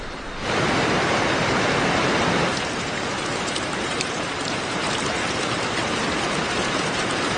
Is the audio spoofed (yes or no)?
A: yes